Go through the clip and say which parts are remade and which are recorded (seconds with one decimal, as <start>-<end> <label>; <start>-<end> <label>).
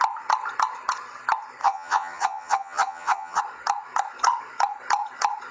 0.0-1.6 recorded; 1.6-3.4 remade; 3.4-5.5 recorded